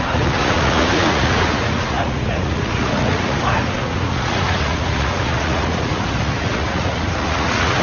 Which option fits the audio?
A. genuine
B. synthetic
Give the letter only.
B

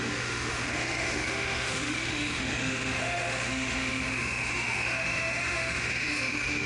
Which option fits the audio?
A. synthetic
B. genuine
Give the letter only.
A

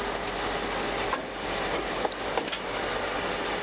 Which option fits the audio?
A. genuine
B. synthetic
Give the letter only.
A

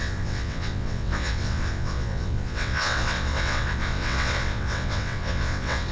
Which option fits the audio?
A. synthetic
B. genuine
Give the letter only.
A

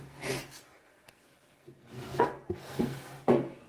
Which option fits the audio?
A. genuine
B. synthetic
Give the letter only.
B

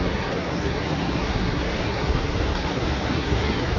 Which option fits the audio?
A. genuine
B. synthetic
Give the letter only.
B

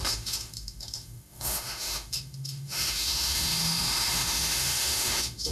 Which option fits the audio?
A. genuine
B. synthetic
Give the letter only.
B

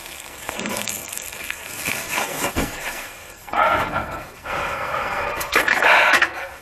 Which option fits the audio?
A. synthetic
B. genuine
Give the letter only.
A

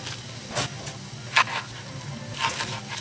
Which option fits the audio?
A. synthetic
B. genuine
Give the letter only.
B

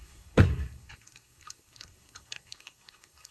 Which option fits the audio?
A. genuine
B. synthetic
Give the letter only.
B